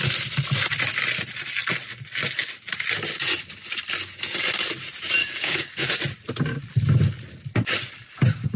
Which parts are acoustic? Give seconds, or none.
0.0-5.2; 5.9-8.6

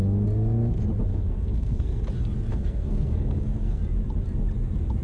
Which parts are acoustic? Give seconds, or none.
0.0-1.1; 2.0-2.5; 3.8-5.0

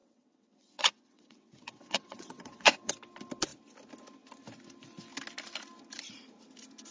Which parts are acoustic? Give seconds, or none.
2.9-6.9

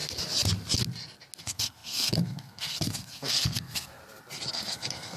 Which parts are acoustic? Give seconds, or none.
0.0-1.4; 4.0-4.5

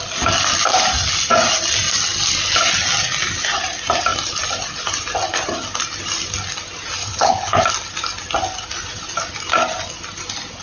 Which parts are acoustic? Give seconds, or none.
0.0-7.0; 7.6-10.6

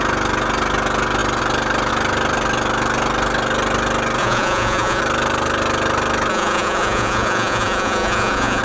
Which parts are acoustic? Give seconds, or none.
0.0-4.2; 5.0-6.3

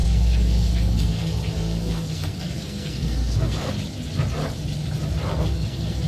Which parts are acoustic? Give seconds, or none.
3.7-5.3

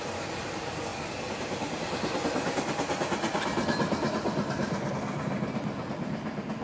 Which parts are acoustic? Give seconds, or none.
0.0-6.6